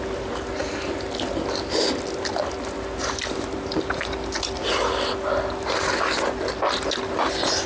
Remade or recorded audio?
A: recorded